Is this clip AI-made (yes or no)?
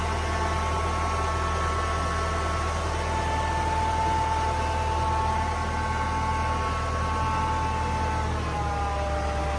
no